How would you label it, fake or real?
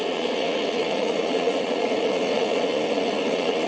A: fake